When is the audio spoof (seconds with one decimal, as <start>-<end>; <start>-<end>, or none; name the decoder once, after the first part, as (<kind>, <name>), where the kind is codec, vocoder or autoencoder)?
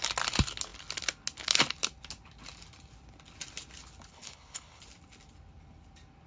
4.1-4.8 (codec, HILCodec)